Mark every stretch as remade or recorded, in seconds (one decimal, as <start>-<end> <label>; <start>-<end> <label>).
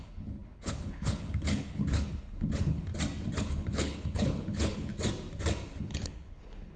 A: 0.0-2.9 remade; 2.9-3.4 recorded; 3.4-4.9 remade; 4.9-5.8 recorded; 5.8-6.8 remade